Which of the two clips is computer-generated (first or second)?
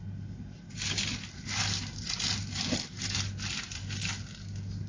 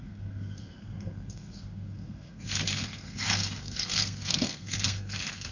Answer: second